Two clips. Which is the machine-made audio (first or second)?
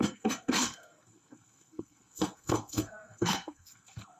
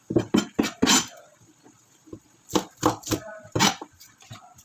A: first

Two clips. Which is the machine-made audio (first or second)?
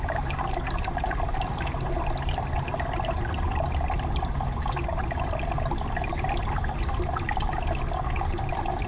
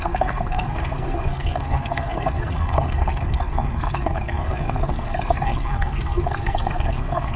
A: second